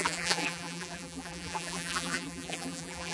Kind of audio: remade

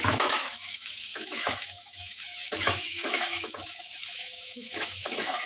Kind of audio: remade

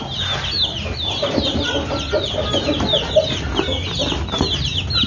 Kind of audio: recorded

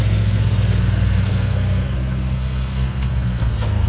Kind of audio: remade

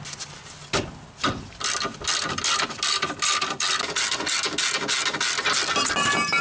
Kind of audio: recorded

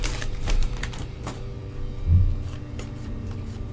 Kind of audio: remade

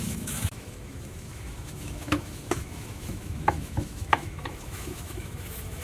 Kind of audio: remade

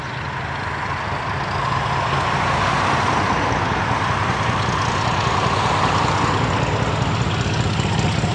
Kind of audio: recorded